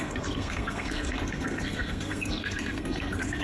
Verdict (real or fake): fake